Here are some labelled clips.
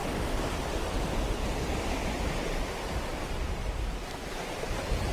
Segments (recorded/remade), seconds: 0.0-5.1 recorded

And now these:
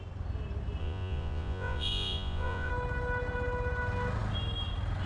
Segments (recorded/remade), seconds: 0.0-0.8 recorded; 0.8-2.7 remade; 2.7-5.1 recorded

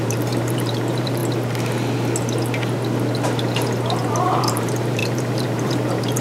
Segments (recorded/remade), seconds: 0.0-1.2 remade; 1.2-4.1 recorded; 4.1-6.2 remade

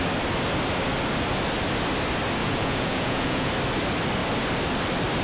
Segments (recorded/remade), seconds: 0.0-2.4 recorded; 2.4-3.5 remade; 3.5-5.2 recorded

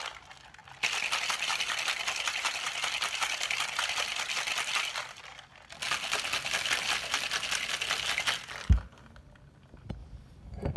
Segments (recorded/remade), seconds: 0.0-10.0 recorded; 10.0-10.8 remade

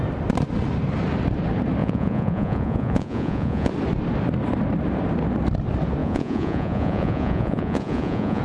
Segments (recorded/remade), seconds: 0.0-1.8 recorded; 1.8-3.7 remade; 3.7-6.0 recorded; 6.0-8.4 remade